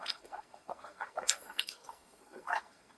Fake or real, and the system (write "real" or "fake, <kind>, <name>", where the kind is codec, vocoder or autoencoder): fake, codec, SNAC